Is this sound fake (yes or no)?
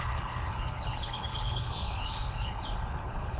yes